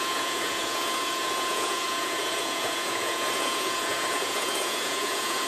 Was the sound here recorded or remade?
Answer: remade